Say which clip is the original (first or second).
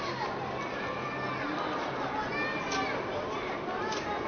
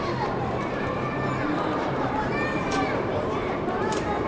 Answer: first